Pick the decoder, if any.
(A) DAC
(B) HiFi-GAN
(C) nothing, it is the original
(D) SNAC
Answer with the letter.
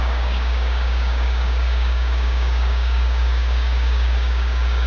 A